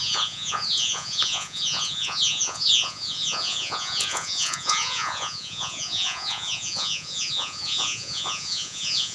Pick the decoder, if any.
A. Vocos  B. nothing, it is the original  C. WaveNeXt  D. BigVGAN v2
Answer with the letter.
A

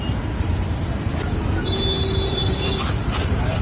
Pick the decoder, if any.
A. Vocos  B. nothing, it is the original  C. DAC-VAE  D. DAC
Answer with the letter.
B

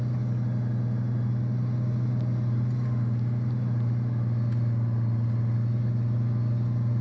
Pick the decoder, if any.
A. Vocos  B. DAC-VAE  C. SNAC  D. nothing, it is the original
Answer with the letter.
D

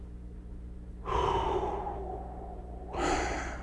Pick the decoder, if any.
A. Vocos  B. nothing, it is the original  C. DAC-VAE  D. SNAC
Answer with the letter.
B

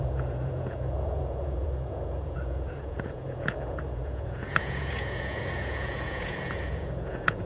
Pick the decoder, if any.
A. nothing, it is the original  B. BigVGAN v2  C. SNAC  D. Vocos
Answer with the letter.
D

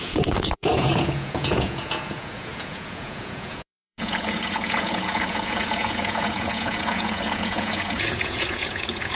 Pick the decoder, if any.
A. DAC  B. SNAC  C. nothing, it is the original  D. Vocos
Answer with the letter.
D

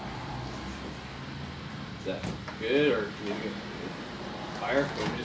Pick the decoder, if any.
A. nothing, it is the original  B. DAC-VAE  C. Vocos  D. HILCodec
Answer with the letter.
A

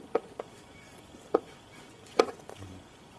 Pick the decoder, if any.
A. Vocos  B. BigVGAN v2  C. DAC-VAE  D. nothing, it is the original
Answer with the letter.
A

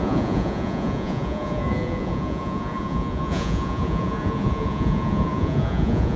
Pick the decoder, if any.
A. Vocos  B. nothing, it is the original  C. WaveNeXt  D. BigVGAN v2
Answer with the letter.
A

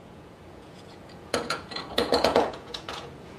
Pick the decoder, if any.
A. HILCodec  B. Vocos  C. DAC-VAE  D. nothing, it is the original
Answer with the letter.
B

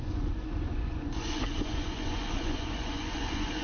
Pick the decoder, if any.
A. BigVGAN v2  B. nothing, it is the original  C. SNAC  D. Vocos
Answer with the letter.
D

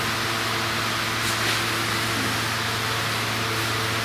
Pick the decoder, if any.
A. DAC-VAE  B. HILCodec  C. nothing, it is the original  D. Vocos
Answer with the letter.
C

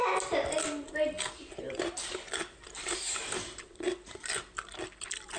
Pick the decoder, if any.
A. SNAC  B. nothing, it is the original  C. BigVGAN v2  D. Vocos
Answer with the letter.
B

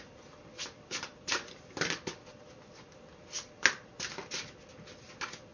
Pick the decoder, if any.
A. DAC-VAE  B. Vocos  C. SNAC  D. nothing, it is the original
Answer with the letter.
D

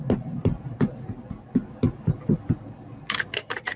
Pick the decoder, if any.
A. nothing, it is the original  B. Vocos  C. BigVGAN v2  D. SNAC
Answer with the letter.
A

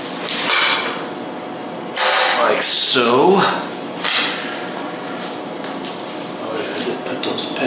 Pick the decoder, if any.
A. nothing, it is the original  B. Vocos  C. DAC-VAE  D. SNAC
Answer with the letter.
A